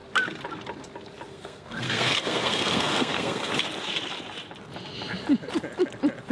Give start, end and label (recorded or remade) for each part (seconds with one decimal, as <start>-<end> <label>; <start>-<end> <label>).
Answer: 0.0-1.3 recorded; 1.3-3.5 remade; 3.5-6.3 recorded